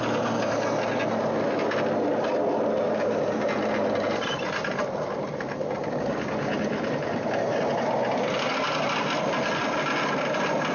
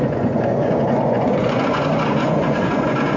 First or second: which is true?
first